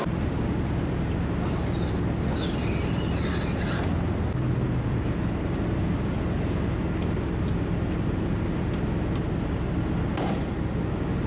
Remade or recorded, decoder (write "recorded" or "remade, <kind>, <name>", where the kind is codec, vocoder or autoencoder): recorded